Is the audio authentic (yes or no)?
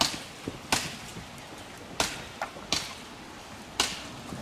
yes